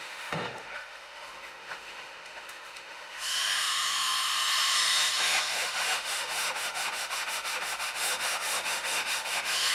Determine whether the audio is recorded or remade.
remade